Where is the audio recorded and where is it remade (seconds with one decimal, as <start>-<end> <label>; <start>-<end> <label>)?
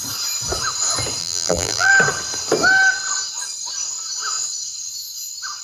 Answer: 0.0-1.2 recorded; 1.2-1.9 remade; 1.9-5.6 recorded